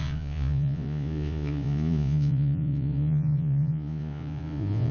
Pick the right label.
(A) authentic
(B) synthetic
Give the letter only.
B